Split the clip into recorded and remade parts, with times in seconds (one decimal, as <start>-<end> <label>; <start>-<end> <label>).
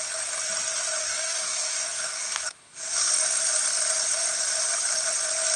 0.0-1.0 recorded; 1.0-3.1 remade; 3.1-5.6 recorded